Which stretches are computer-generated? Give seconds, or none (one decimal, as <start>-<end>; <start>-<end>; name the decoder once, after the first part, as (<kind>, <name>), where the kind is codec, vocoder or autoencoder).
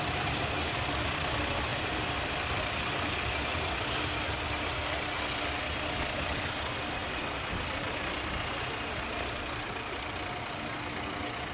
none